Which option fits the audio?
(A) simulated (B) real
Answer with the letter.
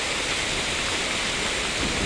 B